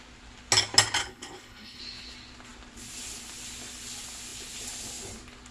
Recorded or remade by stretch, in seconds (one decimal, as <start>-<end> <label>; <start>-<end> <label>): 0.0-1.0 recorded; 1.0-1.8 remade; 1.8-5.5 recorded